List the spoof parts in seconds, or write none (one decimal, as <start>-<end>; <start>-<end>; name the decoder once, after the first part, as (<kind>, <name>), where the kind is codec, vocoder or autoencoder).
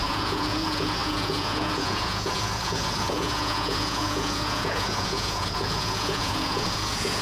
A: 0.0-7.2 (vocoder, Vocos)